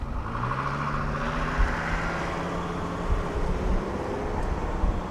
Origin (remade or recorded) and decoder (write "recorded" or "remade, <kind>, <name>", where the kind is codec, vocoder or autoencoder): recorded